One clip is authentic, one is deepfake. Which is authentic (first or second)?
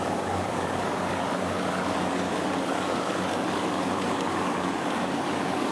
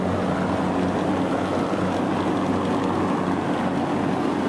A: second